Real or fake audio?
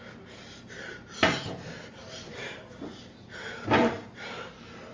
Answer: real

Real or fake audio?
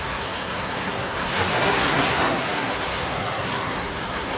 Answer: fake